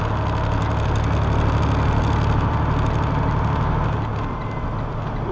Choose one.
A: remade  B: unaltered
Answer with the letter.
B